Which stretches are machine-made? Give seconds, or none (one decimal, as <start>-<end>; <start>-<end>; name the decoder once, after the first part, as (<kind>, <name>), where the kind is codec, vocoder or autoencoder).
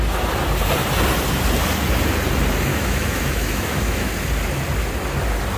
2.7-4.1 (autoencoder, DAC-VAE)